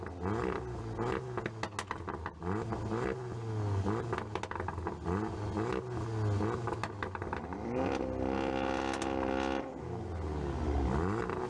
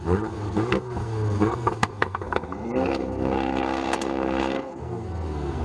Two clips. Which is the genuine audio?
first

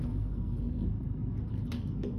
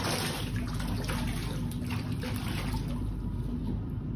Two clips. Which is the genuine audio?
second